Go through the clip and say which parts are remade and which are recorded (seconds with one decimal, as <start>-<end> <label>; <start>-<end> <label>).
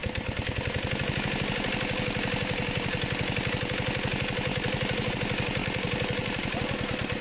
0.0-4.5 recorded; 4.5-5.1 remade; 5.1-5.6 recorded; 5.6-6.6 remade; 6.6-7.2 recorded